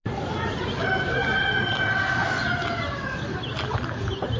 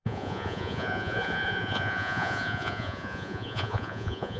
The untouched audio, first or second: first